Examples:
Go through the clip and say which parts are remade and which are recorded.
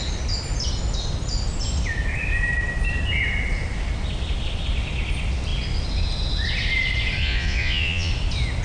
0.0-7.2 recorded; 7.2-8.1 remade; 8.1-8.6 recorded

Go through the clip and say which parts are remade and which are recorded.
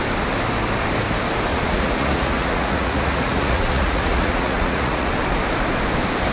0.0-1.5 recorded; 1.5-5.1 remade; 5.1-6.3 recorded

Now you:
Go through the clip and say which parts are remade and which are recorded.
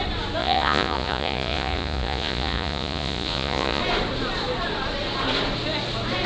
0.0-0.4 recorded; 0.4-3.8 remade; 3.8-6.3 recorded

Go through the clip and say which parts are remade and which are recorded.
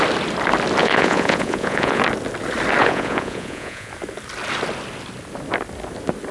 0.0-0.8 recorded; 0.8-2.0 remade; 2.0-2.8 recorded; 2.8-3.9 remade; 3.9-6.3 recorded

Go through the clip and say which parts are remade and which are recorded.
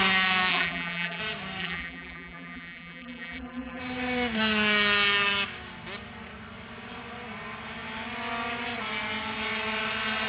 0.0-0.5 recorded; 0.5-1.2 remade; 1.2-1.6 recorded; 1.6-3.8 remade; 3.8-10.3 recorded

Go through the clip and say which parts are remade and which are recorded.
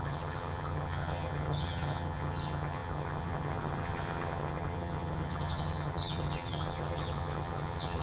0.0-8.0 remade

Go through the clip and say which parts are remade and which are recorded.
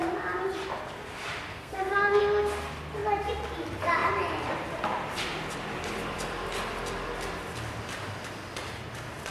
0.0-1.5 recorded; 1.5-2.2 remade; 2.2-9.3 recorded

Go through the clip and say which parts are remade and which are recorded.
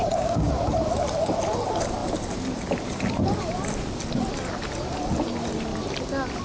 0.0-0.5 remade; 0.5-6.4 recorded